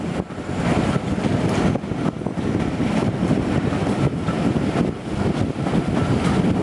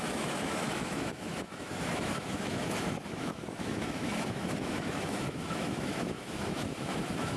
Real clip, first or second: first